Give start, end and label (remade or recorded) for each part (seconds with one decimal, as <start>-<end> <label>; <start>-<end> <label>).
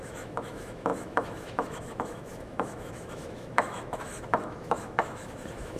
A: 0.0-5.8 remade